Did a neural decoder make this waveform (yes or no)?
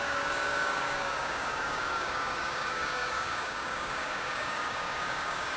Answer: yes